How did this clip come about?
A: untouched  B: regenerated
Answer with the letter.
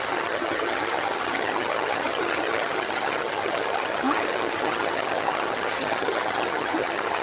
B